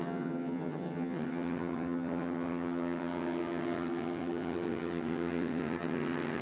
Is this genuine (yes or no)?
no